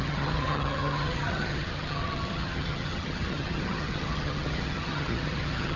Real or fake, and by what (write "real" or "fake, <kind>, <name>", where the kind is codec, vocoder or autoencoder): fake, vocoder, HiFi-GAN